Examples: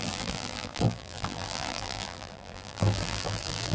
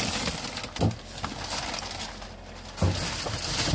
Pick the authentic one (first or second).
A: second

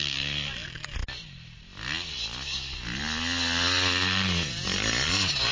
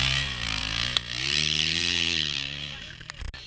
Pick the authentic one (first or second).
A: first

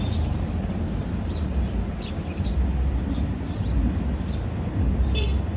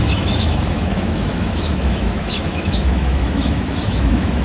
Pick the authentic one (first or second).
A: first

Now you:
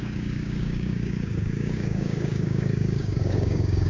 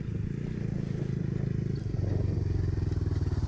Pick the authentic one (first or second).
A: second